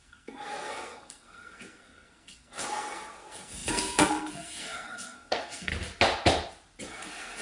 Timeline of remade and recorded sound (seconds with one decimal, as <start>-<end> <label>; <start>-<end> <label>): 0.0-5.7 remade; 5.7-6.9 recorded; 6.9-7.4 remade